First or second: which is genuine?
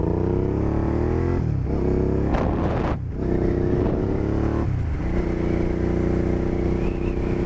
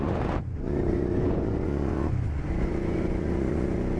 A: first